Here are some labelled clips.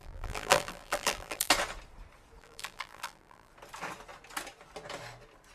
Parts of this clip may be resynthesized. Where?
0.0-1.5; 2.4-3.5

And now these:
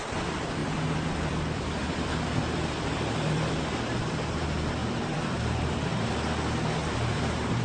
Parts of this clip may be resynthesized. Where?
0.6-3.5; 4.8-6.1; 6.8-7.6

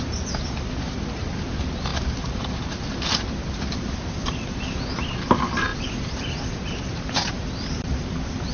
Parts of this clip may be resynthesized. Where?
1.9-4.6; 5.7-8.5

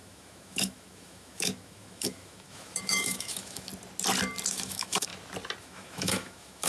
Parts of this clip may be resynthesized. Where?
0.0-3.7; 4.5-5.1; 5.6-6.7

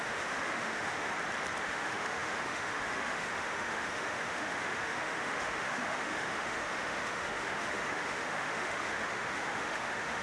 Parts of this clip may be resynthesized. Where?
0.0-1.1; 1.6-10.2

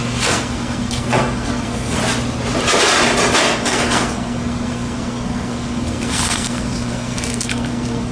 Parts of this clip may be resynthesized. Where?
0.0-2.0; 3.4-8.1

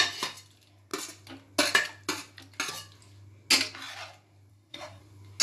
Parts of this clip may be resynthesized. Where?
4.5-5.0